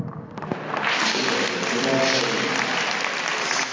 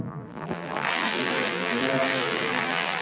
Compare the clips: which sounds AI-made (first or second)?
second